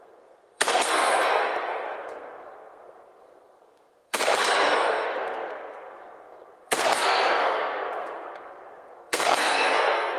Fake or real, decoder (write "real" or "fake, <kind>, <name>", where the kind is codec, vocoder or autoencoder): fake, codec, SNAC